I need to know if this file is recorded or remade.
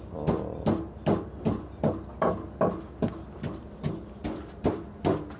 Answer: recorded